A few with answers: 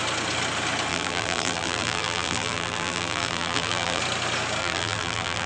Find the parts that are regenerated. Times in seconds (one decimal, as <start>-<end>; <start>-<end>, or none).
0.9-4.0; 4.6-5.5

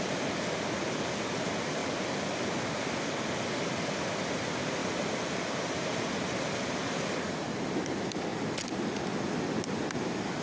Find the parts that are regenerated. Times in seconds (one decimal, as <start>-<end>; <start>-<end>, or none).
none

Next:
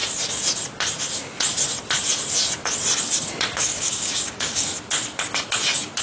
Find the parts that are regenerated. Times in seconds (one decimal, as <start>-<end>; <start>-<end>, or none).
3.6-4.7

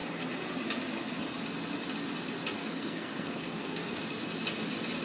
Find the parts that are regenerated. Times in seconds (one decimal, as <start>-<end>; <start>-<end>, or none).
2.6-4.0

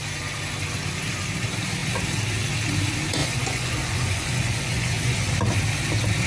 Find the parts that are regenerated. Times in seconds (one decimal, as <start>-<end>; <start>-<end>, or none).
3.2-5.3

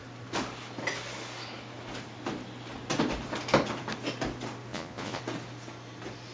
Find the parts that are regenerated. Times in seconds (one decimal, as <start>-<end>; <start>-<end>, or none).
4.7-5.2

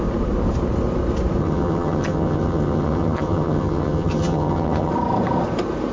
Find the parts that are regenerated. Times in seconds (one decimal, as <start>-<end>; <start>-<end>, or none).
1.4-4.9